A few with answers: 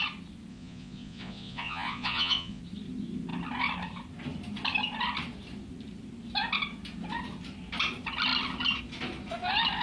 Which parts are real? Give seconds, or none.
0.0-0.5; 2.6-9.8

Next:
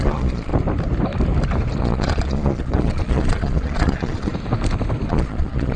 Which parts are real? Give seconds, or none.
0.5-1.8; 4.3-5.1

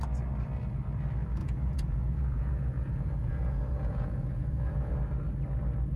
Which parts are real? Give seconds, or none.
0.0-1.4; 5.0-6.0

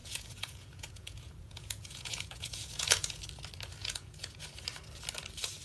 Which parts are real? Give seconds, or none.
3.2-3.8; 4.4-5.6

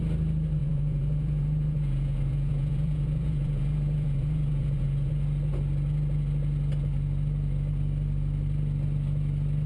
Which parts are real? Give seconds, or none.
0.0-0.6; 5.1-9.7

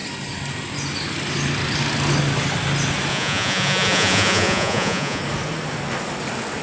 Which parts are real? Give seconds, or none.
0.0-3.1; 5.2-6.6

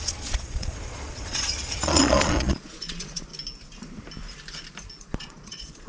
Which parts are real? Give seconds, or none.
3.3-5.0